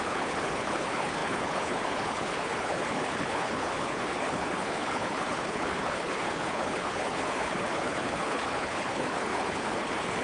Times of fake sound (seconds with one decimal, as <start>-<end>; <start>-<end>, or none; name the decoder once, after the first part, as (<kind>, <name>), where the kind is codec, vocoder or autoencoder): 0.0-10.2 (codec, HILCodec)